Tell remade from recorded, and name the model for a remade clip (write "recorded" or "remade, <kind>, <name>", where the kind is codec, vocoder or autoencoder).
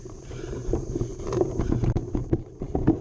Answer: remade, vocoder, BigVGAN v2